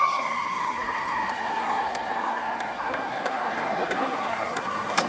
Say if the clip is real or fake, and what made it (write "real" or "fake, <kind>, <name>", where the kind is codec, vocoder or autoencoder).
fake, codec, SNAC